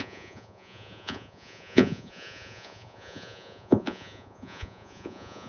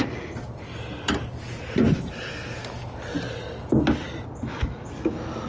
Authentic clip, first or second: second